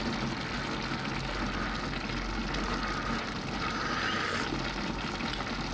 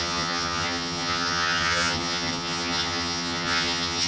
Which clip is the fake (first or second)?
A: second